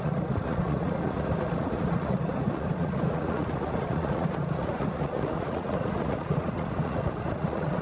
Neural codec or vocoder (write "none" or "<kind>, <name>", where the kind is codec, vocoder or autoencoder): vocoder, Vocos